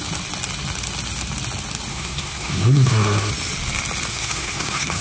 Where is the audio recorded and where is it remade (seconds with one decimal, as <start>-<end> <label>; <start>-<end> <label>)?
0.0-1.9 recorded; 1.9-3.3 remade; 3.3-4.1 recorded; 4.1-5.0 remade